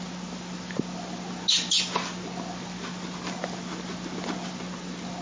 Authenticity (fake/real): real